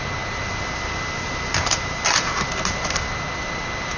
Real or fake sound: real